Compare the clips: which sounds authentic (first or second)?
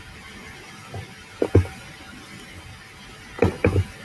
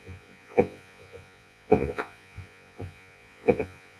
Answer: first